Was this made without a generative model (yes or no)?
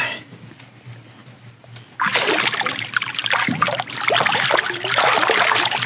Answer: yes